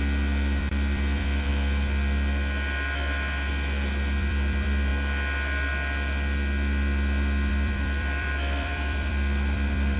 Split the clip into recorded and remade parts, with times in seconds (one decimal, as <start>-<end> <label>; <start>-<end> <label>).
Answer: 0.0-4.9 remade; 4.9-7.5 recorded; 7.5-10.0 remade